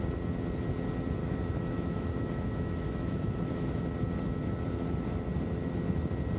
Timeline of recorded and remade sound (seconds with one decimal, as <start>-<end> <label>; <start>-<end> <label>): 0.0-1.2 recorded; 1.2-3.8 remade; 3.8-6.4 recorded